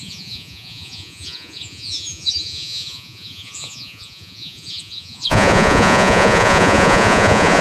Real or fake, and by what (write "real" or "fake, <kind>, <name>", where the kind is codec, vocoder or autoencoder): fake, vocoder, Vocos